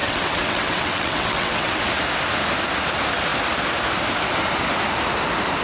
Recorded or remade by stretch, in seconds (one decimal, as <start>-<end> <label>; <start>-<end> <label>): 0.0-1.8 remade; 1.8-5.6 recorded